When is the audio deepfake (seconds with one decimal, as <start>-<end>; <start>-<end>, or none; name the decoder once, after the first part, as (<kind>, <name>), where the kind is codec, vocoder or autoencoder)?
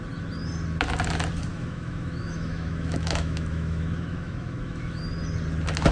1.5-5.0 (autoencoder, DAC-VAE)